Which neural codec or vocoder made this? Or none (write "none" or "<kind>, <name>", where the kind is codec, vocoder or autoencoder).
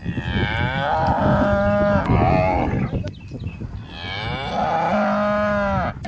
none